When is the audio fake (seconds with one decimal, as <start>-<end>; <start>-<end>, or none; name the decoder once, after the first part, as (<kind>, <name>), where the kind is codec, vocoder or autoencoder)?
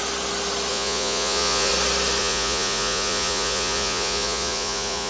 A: 0.7-1.7 (vocoder, Vocos); 2.2-5.1